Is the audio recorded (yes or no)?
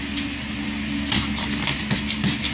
yes